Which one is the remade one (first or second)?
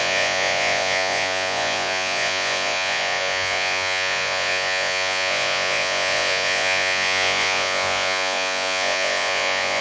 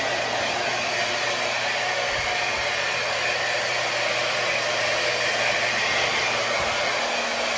first